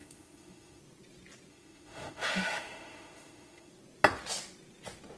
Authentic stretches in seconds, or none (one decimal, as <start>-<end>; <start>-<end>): 0.8-1.5; 3.7-5.2

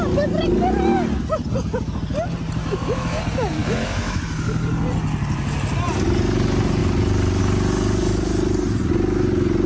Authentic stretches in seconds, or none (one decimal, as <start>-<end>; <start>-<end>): 0.0-2.6; 3.2-3.6; 4.2-9.7